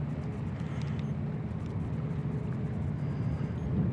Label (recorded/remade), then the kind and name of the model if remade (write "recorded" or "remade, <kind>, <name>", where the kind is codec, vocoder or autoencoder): recorded